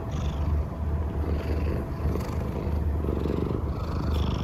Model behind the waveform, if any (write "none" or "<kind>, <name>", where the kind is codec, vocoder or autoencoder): none